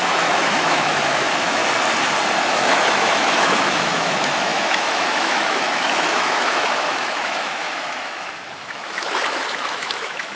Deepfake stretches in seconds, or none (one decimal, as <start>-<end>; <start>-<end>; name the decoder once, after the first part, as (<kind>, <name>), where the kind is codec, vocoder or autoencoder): 0.0-1.6 (autoencoder, DAC-VAE); 2.4-10.4